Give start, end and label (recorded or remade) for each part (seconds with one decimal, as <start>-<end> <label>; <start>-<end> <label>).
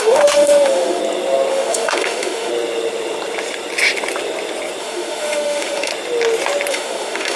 0.0-1.0 remade; 1.0-1.5 recorded; 1.5-2.5 remade; 2.5-4.8 recorded; 4.8-5.9 remade; 5.9-6.7 recorded; 6.7-7.4 remade